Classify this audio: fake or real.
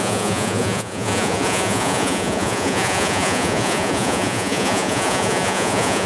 fake